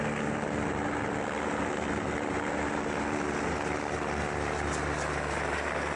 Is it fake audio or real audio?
real